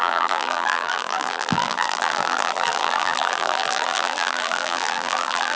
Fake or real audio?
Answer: fake